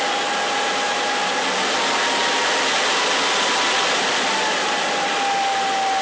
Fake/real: real